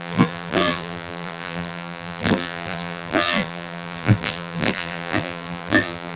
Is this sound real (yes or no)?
no